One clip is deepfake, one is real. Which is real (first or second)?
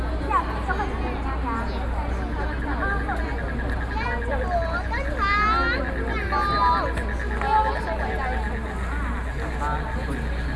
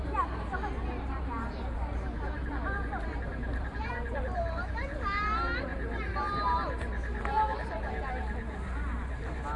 first